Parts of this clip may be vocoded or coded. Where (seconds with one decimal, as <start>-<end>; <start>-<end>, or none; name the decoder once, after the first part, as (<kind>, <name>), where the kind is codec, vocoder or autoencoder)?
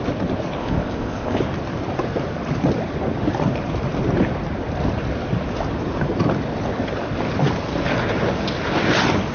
0.6-1.4 (codec, ZipCodec)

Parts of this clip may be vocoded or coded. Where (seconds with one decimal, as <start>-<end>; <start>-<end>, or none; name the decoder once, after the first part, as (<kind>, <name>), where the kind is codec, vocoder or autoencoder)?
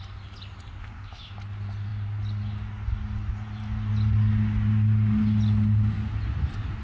0.8-1.3 (codec, ZipCodec)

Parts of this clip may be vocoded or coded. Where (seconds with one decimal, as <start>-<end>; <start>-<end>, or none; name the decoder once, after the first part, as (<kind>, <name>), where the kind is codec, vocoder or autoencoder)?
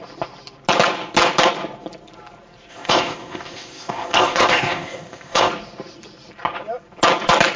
2.7-5.5 (codec, ZipCodec)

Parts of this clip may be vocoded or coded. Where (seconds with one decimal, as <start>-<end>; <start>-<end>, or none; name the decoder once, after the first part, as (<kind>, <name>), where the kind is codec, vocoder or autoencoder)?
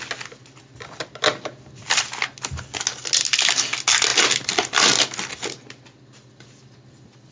none